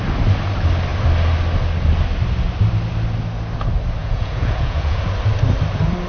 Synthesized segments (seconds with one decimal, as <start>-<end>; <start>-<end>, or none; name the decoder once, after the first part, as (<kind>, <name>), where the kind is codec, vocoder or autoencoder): 4.0-5.0 (vocoder, Vocos)